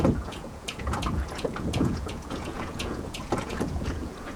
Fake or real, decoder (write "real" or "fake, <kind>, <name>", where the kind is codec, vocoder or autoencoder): fake, vocoder, Vocos